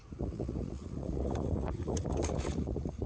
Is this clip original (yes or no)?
no